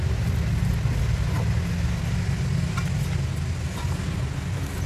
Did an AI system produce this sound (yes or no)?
no